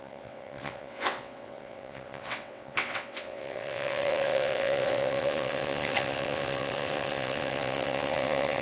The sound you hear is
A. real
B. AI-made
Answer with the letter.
B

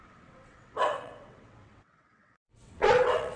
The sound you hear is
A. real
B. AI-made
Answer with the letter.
B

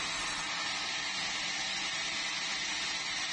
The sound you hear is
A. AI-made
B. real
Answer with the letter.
B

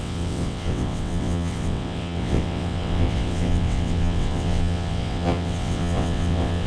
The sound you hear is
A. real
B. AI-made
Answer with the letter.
B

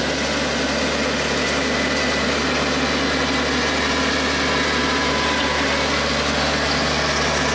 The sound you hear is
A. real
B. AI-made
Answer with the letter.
A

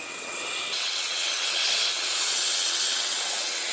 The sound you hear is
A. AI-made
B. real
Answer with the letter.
A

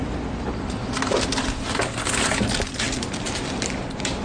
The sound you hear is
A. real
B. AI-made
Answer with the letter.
A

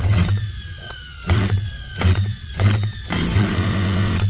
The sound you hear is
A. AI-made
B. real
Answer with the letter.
A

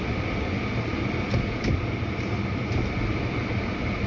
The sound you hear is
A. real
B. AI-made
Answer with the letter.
A